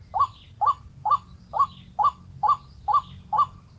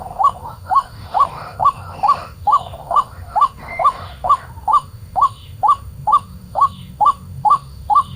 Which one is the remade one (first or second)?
second